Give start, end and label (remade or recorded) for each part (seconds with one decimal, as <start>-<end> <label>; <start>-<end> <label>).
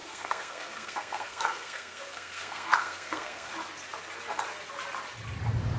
0.0-3.5 remade; 3.5-5.8 recorded